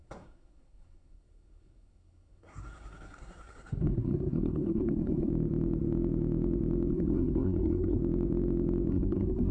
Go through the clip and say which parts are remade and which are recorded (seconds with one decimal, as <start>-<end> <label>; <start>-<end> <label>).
0.0-5.3 remade; 5.3-6.9 recorded; 6.9-8.0 remade; 8.0-8.9 recorded; 8.9-9.5 remade